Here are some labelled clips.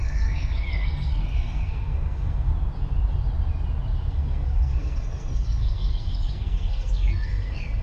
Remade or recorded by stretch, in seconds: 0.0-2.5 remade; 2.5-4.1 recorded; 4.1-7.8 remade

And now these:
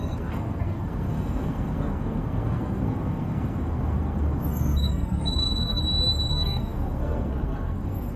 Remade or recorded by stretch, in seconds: 0.0-5.8 remade; 5.8-6.3 recorded; 6.3-8.2 remade

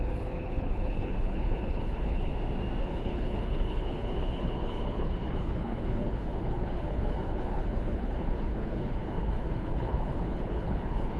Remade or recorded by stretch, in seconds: 0.0-2.3 remade; 2.3-2.8 recorded; 2.8-11.2 remade

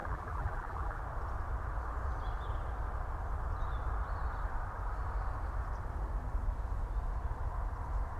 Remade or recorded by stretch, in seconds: 0.0-1.0 remade; 1.0-8.2 recorded

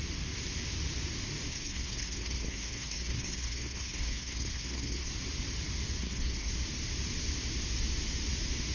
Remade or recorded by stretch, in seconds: 0.0-1.5 recorded; 1.5-5.1 remade; 5.1-6.0 recorded; 6.0-6.5 remade; 6.5-8.7 recorded

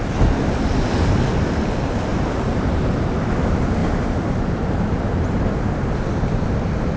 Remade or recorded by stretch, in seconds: 0.0-2.1 recorded; 2.1-2.8 remade; 2.8-3.8 recorded; 3.8-5.5 remade; 5.5-7.0 recorded

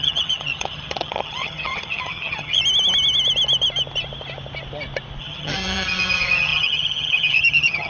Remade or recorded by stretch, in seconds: 0.0-2.6 remade; 2.6-5.2 recorded; 5.2-7.9 remade